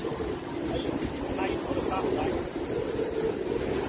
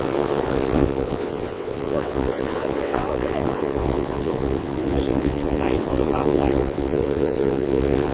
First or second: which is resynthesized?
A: second